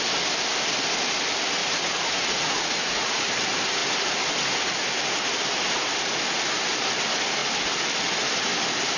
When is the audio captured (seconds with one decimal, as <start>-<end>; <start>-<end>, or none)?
0.0-1.6; 3.2-9.0